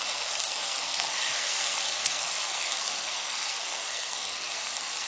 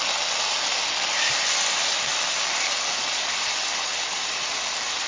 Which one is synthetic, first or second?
first